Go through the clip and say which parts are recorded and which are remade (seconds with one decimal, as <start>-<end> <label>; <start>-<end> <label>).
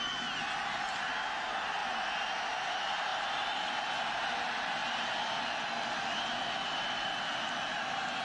0.0-8.2 recorded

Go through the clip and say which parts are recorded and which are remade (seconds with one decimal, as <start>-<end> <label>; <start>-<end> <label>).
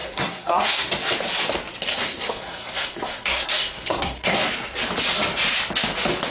0.0-0.9 remade; 0.9-1.9 recorded; 1.9-4.5 remade; 4.5-6.3 recorded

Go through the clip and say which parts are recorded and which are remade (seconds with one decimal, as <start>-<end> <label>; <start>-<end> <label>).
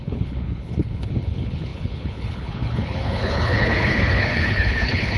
0.0-5.2 remade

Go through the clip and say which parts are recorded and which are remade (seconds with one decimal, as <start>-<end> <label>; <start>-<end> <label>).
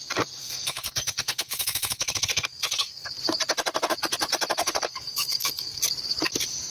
0.0-0.4 recorded; 0.4-3.1 remade; 3.1-4.6 recorded; 4.6-5.8 remade; 5.8-6.7 recorded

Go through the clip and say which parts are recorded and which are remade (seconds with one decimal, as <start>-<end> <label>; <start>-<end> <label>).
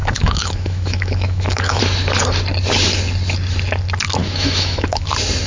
0.0-1.8 remade; 1.8-4.2 recorded; 4.2-5.1 remade; 5.1-5.5 recorded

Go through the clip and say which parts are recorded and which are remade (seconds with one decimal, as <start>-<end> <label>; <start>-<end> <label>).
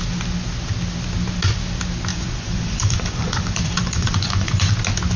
0.0-2.1 recorded; 2.1-4.7 remade; 4.7-5.2 recorded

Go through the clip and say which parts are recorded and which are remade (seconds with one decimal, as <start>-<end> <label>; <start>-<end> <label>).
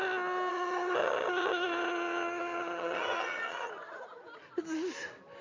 0.0-0.5 recorded; 0.5-3.7 remade; 3.7-5.4 recorded